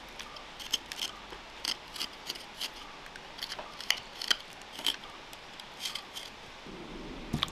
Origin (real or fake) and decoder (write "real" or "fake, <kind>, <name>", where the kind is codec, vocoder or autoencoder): real